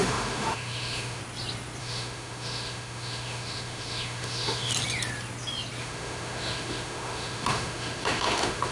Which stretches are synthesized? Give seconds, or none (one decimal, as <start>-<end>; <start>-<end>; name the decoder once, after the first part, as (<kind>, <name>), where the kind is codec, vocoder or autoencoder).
0.0-1.2 (autoencoder, DAC-VAE); 1.8-4.7; 5.8-8.7